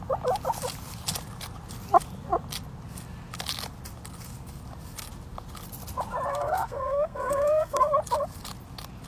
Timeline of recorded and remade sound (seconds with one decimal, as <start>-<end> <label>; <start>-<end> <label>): 0.0-6.3 recorded; 6.3-7.8 remade; 7.8-9.1 recorded